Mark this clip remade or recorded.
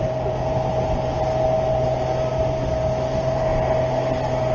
recorded